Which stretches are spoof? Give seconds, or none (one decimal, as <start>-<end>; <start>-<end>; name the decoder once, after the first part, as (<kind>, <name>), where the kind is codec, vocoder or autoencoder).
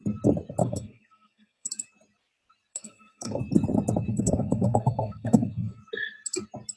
0.6-1.7 (codec, SNAC); 2.7-3.4; 4.1-5.8